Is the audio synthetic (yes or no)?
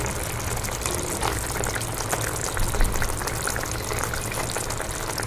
no